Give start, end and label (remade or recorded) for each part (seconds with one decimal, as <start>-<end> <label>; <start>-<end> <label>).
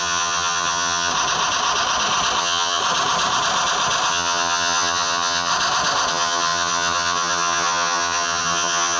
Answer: 0.0-1.1 remade; 1.1-2.4 recorded; 2.4-2.8 remade; 2.8-4.1 recorded; 4.1-5.5 remade; 5.5-6.1 recorded; 6.1-9.0 remade